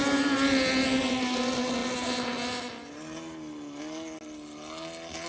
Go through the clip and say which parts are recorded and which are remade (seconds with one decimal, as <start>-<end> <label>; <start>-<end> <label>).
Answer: 0.0-5.3 recorded